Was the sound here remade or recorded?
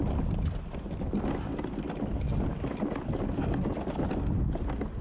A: recorded